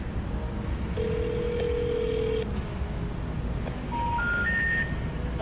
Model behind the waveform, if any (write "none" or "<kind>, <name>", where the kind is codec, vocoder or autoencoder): none